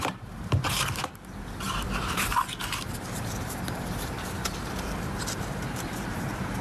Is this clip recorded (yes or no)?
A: no